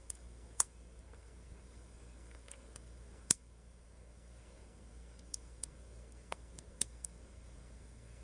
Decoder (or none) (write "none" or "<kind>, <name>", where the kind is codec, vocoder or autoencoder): codec, SNAC